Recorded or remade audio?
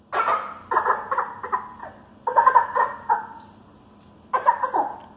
recorded